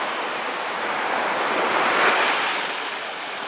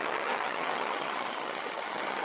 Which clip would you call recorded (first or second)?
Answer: first